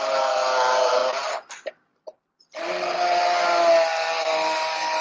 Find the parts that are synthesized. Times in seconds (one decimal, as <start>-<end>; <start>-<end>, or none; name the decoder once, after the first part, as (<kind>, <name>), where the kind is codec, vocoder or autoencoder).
none